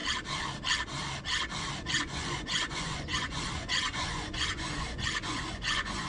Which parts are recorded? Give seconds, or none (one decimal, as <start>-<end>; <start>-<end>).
0.0-2.0